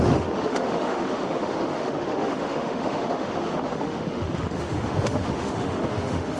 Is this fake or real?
fake